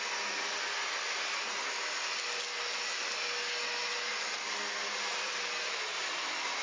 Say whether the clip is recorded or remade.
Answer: recorded